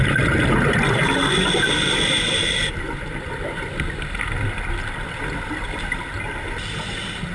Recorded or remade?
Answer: recorded